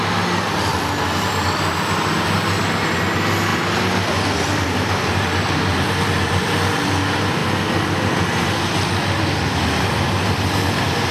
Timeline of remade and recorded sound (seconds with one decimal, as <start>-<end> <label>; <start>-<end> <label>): 0.0-11.1 recorded